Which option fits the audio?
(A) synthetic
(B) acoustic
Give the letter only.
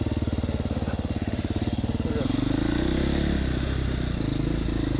B